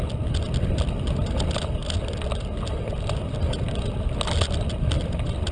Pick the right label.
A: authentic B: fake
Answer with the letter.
A